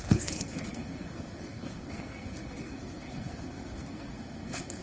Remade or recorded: remade